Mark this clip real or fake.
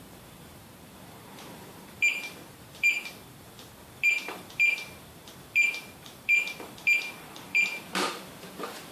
fake